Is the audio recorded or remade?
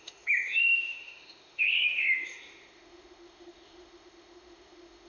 remade